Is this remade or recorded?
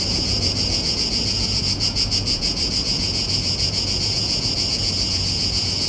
remade